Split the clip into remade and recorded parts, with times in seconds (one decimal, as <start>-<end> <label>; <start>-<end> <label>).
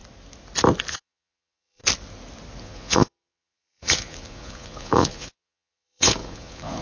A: 0.0-0.9 recorded; 0.9-1.8 remade; 1.8-2.6 recorded; 2.6-6.8 remade